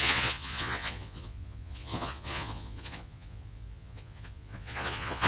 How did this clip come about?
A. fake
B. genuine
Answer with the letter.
A